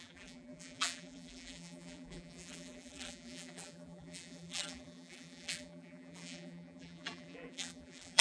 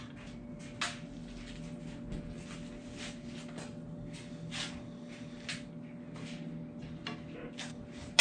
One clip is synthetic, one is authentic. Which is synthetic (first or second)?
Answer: first